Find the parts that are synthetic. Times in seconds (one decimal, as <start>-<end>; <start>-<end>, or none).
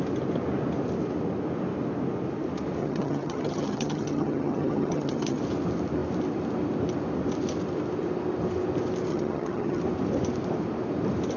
2.8-5.4; 9.1-9.8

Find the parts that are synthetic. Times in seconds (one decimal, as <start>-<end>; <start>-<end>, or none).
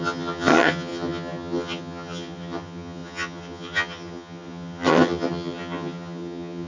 0.0-6.7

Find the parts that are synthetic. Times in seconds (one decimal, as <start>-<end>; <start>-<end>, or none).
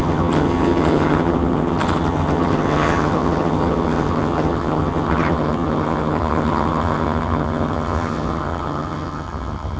0.0-9.8